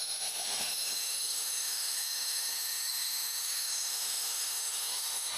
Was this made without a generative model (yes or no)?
no